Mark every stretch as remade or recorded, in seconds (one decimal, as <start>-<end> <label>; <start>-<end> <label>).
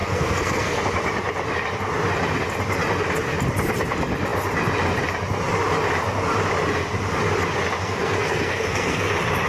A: 0.0-0.8 remade; 0.8-7.8 recorded; 7.8-9.1 remade; 9.1-9.5 recorded